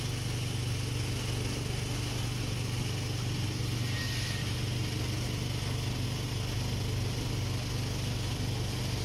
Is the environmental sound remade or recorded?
recorded